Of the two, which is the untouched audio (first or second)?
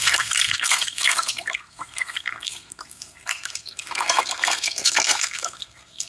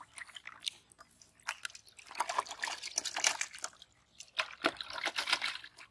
second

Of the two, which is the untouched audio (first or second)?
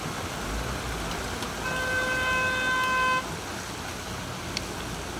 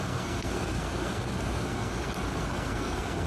first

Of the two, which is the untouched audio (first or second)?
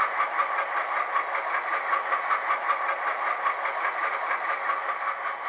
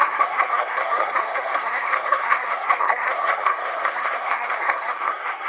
first